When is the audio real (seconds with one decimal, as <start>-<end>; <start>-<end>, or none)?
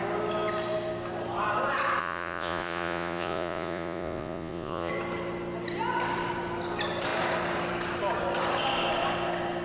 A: 0.0-2.0; 4.9-9.6